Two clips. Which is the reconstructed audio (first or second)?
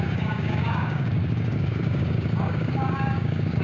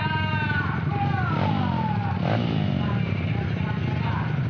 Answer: first